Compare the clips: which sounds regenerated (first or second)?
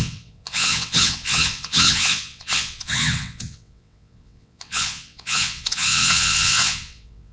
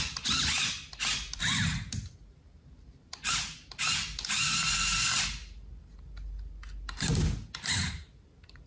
first